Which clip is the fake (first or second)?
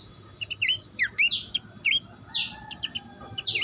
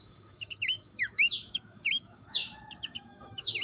second